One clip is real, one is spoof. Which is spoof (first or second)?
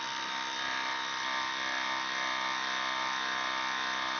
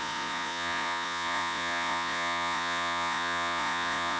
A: second